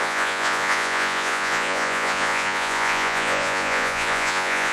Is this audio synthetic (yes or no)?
yes